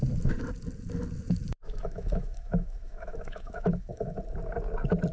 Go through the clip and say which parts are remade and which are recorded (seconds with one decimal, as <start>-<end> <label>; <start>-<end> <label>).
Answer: 0.0-1.6 recorded; 1.6-4.2 remade; 4.2-5.1 recorded